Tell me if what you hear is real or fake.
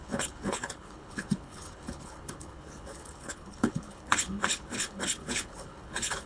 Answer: fake